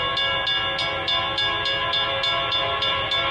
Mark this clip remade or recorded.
recorded